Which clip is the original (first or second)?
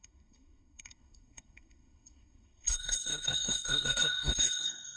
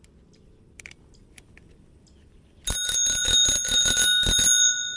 second